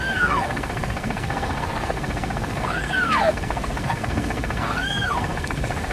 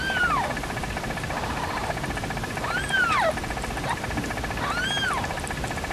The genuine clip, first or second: second